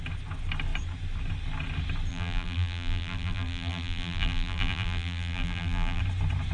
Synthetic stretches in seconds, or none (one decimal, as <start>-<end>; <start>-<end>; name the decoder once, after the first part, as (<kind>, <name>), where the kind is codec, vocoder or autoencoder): 2.1-6.0 (vocoder, BigVGAN v2)